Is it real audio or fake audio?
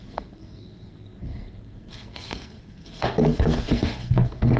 fake